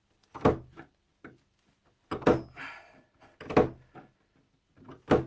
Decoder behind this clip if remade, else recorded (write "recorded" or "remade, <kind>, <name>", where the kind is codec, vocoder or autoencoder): recorded